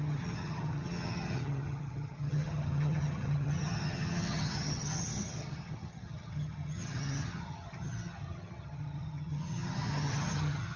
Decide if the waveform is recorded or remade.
remade